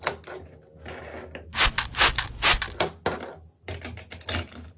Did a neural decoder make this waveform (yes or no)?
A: no